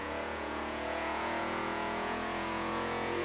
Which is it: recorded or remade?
remade